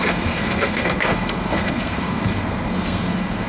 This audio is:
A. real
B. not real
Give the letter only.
B